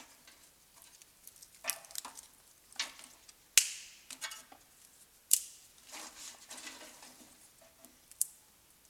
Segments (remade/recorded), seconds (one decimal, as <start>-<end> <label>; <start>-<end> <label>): 0.0-5.2 recorded; 5.2-5.7 remade; 5.7-7.9 recorded; 7.9-8.4 remade; 8.4-8.9 recorded